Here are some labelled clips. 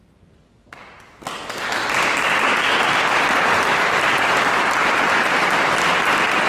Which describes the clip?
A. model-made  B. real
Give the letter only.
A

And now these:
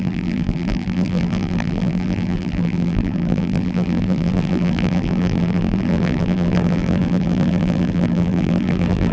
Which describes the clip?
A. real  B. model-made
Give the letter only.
B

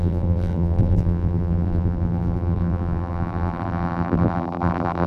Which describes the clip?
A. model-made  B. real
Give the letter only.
A